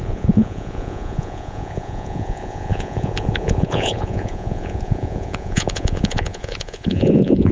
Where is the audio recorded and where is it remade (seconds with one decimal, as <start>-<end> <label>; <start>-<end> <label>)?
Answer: 0.0-7.5 remade